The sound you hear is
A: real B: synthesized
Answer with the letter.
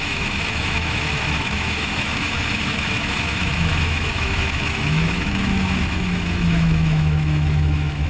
B